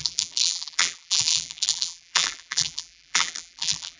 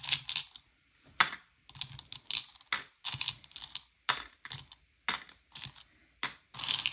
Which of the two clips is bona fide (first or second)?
second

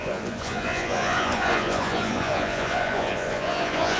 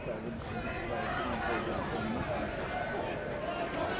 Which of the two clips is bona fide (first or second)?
second